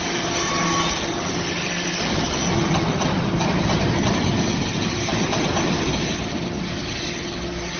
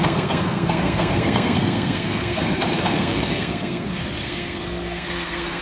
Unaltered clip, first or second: first